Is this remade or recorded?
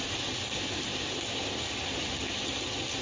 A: recorded